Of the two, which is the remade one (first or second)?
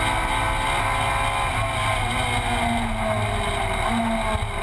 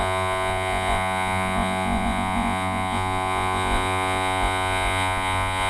second